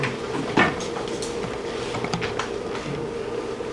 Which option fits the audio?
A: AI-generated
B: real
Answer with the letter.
B